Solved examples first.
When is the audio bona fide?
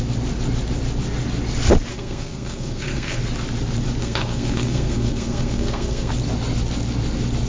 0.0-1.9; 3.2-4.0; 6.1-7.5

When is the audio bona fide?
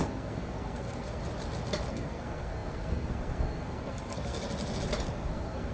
1.2-1.9; 4.4-5.1